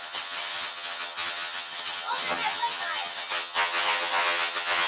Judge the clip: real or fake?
fake